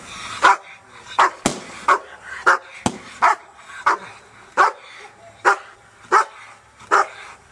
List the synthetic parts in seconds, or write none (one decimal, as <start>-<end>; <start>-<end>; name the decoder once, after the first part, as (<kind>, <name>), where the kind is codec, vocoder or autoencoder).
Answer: none